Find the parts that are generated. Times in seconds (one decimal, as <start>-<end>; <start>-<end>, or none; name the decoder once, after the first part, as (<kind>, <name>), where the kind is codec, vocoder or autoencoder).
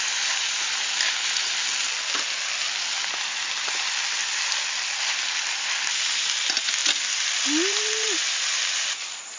6.8-9.4 (vocoder, BigVGAN v2)